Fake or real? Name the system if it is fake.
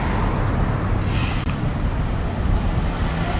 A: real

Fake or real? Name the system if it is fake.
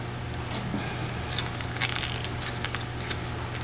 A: real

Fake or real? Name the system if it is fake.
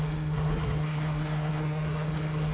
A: fake, codec, SNAC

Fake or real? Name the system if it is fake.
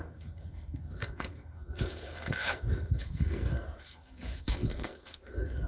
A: fake, codec, SNAC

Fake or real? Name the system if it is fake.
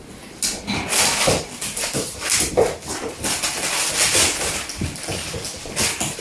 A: real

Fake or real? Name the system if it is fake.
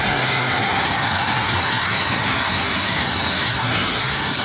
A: fake, codec, SNAC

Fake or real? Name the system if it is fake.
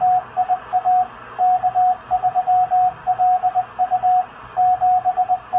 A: real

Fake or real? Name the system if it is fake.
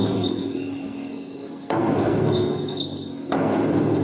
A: fake, codec, SNAC